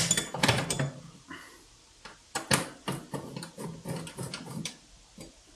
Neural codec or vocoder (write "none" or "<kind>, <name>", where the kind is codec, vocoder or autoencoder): none